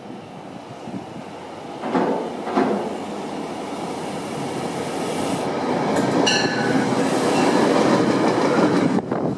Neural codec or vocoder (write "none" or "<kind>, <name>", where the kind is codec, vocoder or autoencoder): none